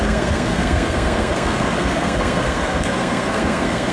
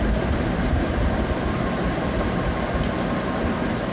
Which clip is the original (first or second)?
second